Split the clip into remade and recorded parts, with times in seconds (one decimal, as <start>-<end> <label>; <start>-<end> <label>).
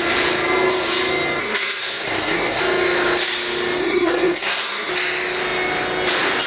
0.0-1.4 recorded; 1.4-2.6 remade; 2.6-3.8 recorded; 3.8-4.9 remade; 4.9-6.5 recorded